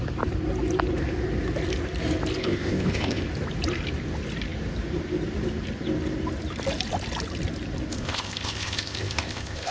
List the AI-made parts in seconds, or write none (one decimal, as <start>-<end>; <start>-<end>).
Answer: 2.4-3.2; 7.9-9.7